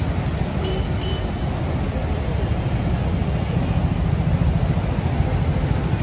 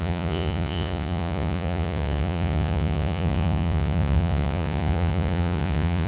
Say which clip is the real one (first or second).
first